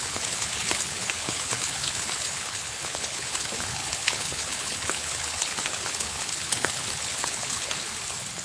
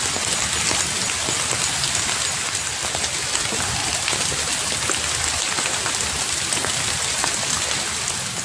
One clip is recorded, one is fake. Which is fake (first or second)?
first